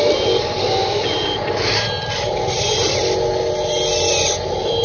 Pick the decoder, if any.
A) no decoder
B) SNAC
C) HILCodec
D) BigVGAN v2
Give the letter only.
A